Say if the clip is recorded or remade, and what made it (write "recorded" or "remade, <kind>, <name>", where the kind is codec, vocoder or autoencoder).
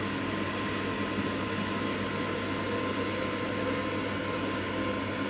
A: recorded